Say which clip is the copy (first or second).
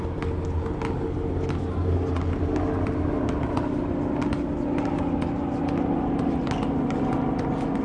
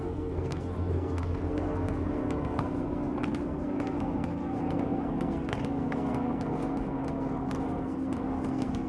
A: second